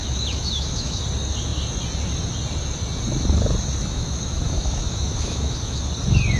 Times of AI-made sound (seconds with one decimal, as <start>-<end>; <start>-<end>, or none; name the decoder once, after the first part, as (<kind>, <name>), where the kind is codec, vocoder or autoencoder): 0.0-1.0 (autoencoder, DAC-VAE); 3.8-5.9